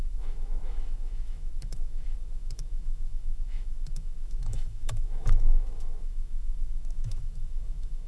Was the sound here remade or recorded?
remade